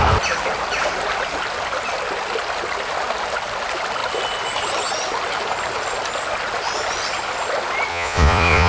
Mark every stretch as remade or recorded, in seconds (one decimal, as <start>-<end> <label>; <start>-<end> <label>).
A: 0.0-7.9 recorded; 7.9-8.7 remade